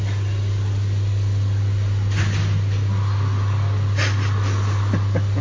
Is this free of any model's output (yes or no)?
yes